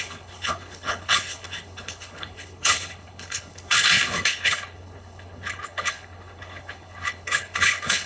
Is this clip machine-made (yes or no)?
yes